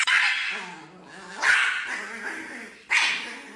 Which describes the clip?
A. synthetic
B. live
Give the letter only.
B